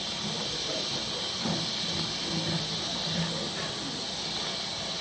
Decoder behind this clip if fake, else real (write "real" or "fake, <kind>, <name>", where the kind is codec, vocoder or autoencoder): real